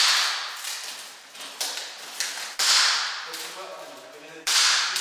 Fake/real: real